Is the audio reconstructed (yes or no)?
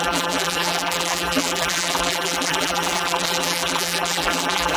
yes